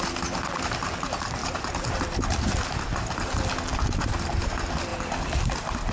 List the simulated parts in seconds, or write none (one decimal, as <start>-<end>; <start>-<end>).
1.4-2.0; 4.9-5.5